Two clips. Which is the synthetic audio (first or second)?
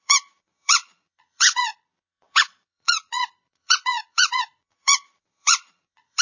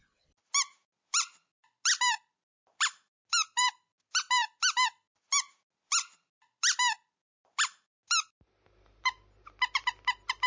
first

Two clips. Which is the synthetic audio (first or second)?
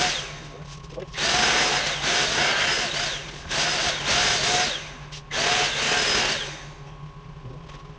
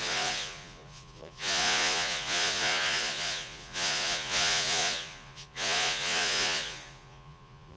second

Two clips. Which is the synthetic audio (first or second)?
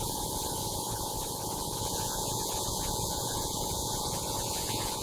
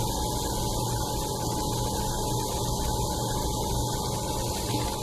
first